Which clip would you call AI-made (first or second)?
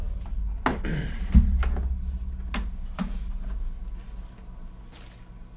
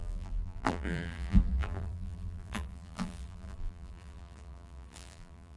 second